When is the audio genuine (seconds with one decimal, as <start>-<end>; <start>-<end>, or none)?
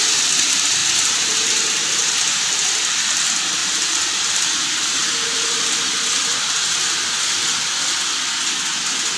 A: 0.0-0.8; 2.6-3.6; 5.6-9.2